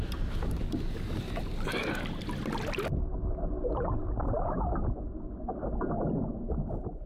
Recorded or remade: recorded